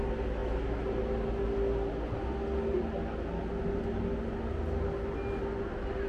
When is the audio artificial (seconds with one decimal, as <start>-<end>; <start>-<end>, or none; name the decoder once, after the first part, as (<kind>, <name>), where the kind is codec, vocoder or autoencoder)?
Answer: none